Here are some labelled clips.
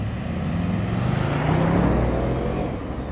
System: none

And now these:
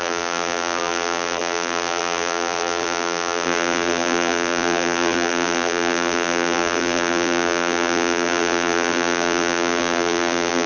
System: vocoder, BigVGAN v2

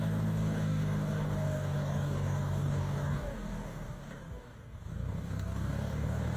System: codec, DAC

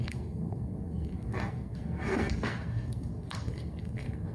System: codec, SNAC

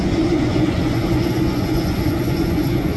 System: vocoder, Vocos